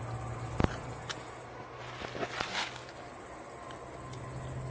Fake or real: real